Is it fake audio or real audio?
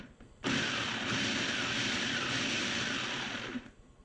real